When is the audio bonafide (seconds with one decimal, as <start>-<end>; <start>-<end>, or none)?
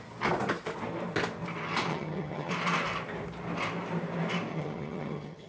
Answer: 0.0-1.9; 2.5-4.5